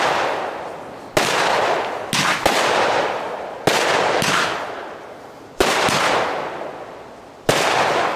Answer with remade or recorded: recorded